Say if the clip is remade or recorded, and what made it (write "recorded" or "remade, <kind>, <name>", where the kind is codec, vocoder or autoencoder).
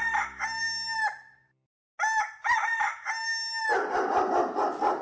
recorded